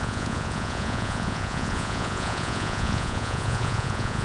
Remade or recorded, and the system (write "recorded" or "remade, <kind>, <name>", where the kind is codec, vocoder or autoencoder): remade, vocoder, Vocos